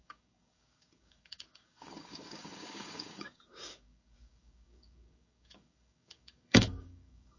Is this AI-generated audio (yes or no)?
yes